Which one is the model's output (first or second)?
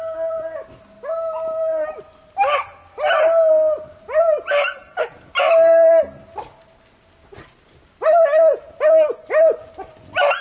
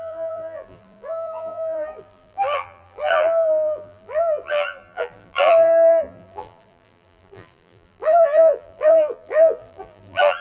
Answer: second